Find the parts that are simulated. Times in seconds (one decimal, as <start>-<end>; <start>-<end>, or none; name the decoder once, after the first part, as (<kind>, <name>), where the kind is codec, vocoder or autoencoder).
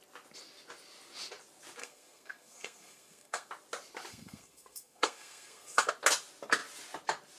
1.8-3.5 (codec, SNAC); 4.1-5.9